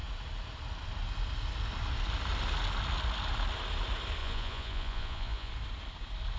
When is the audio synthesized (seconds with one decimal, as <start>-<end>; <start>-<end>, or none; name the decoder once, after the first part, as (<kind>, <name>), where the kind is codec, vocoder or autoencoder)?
4.2-5.5 (vocoder, Vocos)